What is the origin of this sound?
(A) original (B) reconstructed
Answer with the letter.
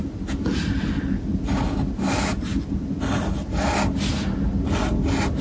A